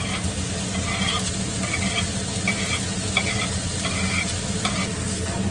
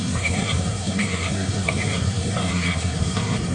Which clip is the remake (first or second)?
second